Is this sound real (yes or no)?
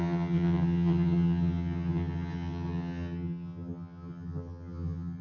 no